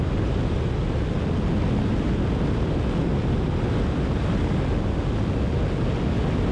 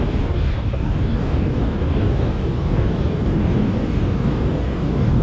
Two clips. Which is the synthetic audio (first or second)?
second